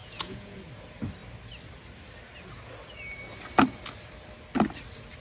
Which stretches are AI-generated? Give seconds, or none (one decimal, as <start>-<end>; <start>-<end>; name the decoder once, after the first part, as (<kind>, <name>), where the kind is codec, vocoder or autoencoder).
0.0-0.6 (vocoder, Vocos)